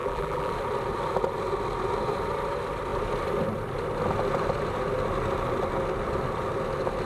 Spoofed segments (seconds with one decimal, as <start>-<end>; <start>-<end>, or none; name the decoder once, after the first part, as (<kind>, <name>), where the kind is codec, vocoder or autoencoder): 0.0-0.5 (vocoder, BigVGAN v2)